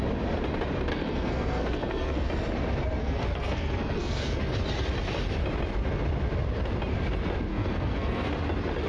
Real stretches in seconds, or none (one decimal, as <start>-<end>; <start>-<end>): 0.0-0.9; 2.3-3.0; 4.4-7.5; 8.3-8.9

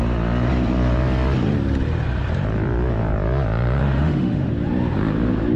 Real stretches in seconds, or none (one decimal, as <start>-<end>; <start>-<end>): 0.0-3.8; 4.5-5.6

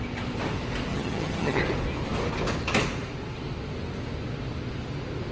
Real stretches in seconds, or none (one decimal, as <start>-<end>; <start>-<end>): 0.0-0.9; 1.6-5.3

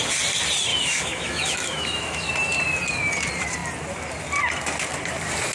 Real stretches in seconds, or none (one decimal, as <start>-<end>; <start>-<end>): 0.0-0.7; 2.3-5.5

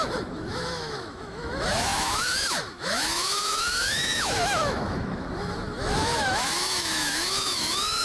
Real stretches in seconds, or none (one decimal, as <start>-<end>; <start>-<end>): none